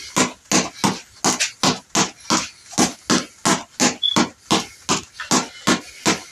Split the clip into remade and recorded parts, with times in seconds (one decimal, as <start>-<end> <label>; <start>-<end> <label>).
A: 0.0-6.3 recorded